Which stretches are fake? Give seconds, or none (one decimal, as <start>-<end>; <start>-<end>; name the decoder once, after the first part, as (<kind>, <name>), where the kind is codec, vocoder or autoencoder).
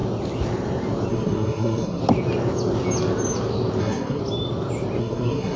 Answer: 1.1-2.0 (codec, SNAC); 3.8-4.2; 5.0-5.6